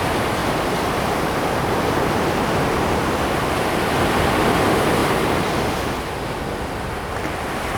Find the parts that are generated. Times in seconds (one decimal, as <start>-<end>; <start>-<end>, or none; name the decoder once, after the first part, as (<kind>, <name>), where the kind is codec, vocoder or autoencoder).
0.4-3.8 (vocoder, BigVGAN v2)